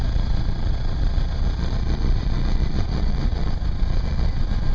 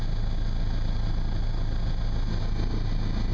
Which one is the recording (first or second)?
second